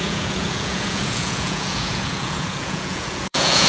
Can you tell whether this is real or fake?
fake